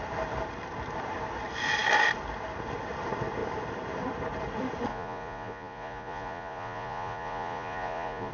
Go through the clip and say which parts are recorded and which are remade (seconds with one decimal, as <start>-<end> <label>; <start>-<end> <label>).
0.0-4.9 recorded; 4.9-8.3 remade